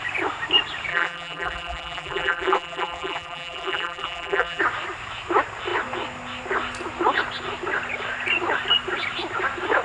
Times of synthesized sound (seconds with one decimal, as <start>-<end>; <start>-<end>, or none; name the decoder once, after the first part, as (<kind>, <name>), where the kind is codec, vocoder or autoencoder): 0.9-4.6 (vocoder, BigVGAN v2)